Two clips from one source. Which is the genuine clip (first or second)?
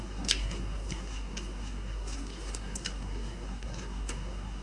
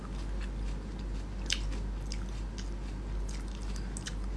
second